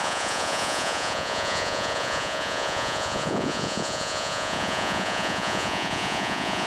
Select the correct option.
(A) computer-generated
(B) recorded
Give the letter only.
A